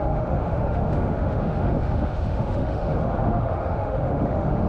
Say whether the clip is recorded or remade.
remade